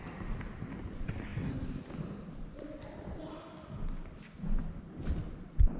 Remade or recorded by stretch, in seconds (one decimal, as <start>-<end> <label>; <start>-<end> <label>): 0.0-5.8 recorded